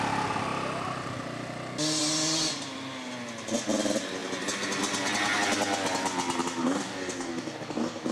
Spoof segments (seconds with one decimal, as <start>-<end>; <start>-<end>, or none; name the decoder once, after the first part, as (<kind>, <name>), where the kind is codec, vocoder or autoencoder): 6.6-8.1 (codec, DAC)